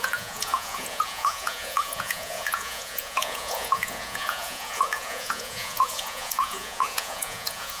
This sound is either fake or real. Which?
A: fake